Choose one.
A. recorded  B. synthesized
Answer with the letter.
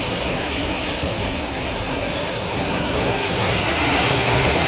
B